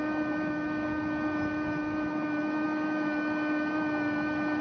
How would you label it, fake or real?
real